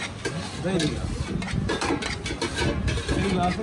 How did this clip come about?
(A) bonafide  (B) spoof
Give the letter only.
A